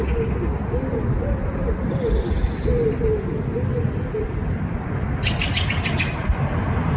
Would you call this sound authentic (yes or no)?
yes